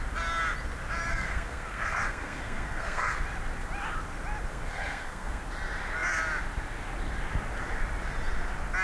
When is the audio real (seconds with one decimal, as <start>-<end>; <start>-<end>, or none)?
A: 0.0-1.1; 3.2-4.5; 5.4-8.8